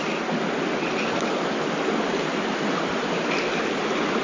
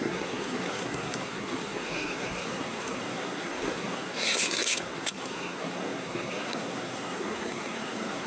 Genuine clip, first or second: first